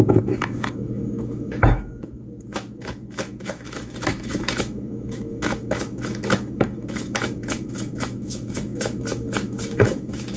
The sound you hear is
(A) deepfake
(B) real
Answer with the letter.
A